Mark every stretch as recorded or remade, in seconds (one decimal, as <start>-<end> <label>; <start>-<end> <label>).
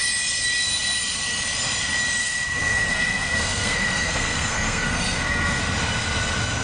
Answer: 0.0-2.2 recorded; 2.2-5.6 remade; 5.6-6.6 recorded